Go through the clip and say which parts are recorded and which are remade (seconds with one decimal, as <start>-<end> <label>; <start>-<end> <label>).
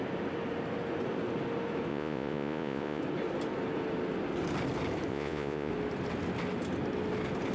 0.0-1.9 recorded; 1.9-3.0 remade; 3.0-5.1 recorded; 5.1-5.7 remade; 5.7-7.5 recorded